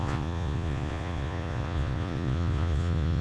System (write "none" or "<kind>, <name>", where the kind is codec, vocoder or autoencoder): vocoder, Vocos